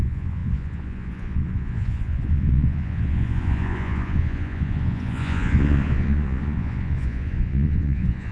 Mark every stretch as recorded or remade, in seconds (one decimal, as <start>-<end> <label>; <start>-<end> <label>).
0.0-8.3 remade